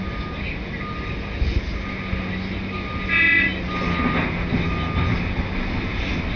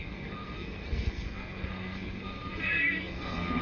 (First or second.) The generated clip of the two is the second